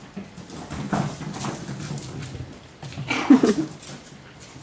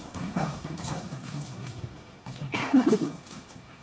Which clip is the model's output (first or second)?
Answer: second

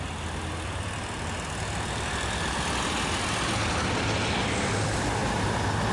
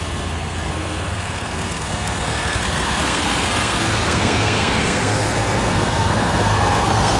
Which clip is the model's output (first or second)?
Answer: second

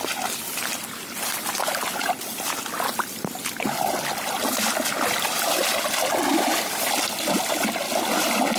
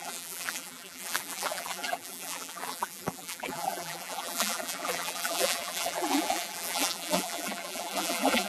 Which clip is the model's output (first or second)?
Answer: second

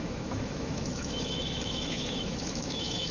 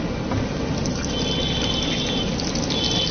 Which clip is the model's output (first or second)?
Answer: first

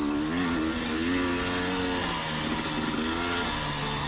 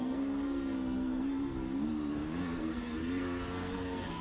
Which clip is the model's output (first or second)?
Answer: second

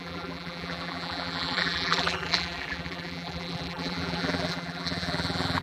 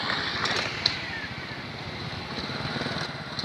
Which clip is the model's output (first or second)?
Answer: first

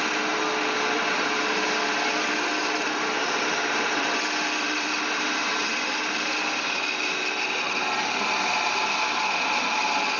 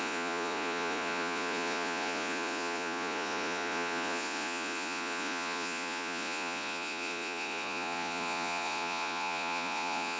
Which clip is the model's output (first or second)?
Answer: second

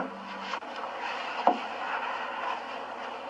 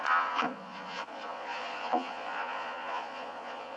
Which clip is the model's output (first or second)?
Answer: second